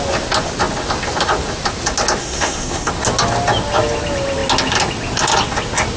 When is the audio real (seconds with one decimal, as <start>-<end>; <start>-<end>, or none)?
0.0-2.2; 2.9-6.0